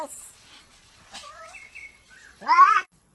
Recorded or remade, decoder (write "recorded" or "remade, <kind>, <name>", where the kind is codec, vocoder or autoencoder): remade, vocoder, Vocos